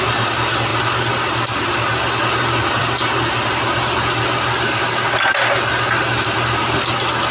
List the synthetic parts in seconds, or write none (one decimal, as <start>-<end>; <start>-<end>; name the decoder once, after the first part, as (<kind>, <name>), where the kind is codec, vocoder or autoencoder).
none